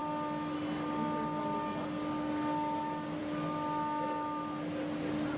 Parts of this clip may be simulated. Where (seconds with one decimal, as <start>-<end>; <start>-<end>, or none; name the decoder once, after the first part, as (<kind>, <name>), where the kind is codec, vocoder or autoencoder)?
none